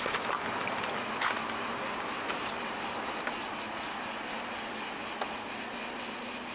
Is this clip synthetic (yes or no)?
no